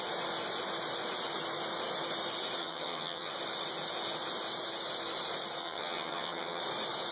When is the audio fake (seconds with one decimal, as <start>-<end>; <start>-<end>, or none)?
2.6-3.3; 5.6-6.6